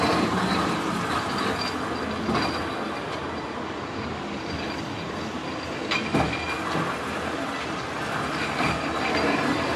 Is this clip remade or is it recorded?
recorded